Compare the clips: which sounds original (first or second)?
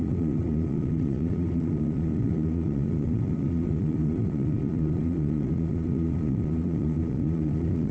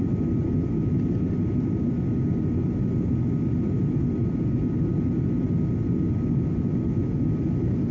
second